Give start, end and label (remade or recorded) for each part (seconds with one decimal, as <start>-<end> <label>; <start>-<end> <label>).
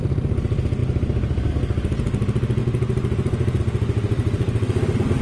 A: 0.0-5.2 recorded